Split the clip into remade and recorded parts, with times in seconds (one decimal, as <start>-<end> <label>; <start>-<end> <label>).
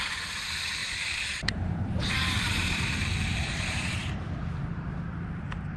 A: 0.0-0.8 recorded; 0.8-4.3 remade; 4.3-5.8 recorded